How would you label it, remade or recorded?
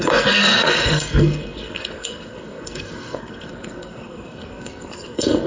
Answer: remade